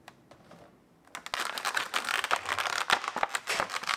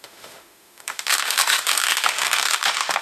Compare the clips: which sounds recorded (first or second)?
first